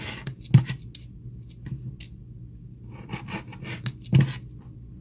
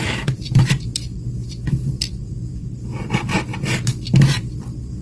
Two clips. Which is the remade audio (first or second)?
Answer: second